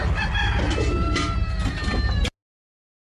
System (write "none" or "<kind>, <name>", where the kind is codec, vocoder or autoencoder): none